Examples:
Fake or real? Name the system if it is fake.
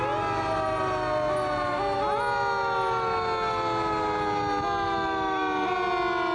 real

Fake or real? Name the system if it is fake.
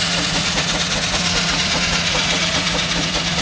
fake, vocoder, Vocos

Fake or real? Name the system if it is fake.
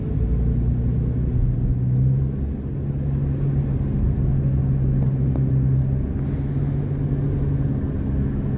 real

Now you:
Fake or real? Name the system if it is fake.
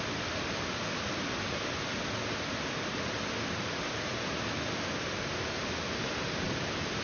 real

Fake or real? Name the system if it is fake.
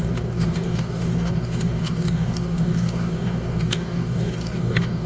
fake, codec, DAC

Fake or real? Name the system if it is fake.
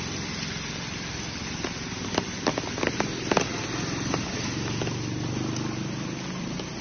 real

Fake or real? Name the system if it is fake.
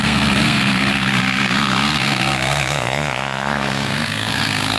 fake, codec, SNAC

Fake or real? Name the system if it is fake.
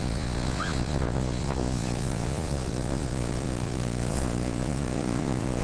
fake, vocoder, Vocos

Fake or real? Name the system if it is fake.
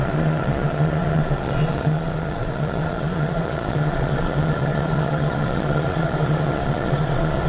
fake, vocoder, Vocos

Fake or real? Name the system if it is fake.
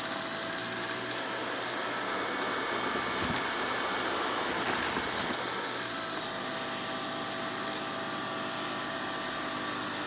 real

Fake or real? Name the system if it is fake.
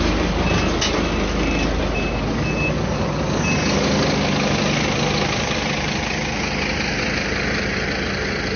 real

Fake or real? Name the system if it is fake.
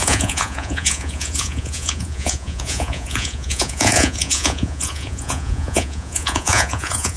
fake, vocoder, Vocos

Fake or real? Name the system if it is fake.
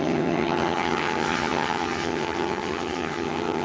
fake, vocoder, HiFi-GAN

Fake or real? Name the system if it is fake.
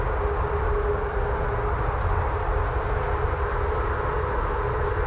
real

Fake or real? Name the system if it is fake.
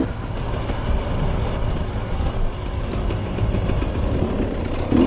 real